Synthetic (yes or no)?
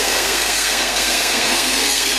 yes